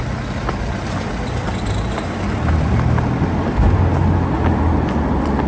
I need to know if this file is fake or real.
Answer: real